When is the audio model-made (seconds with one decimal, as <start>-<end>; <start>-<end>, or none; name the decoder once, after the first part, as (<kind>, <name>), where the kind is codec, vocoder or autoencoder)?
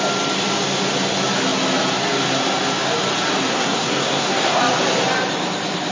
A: 3.5-4.6 (codec, SNAC)